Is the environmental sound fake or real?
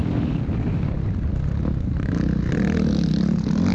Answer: real